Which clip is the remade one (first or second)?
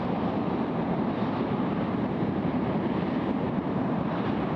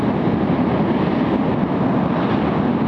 first